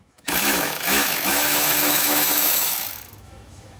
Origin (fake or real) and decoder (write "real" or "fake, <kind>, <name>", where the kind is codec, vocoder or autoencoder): fake, autoencoder, DAC-VAE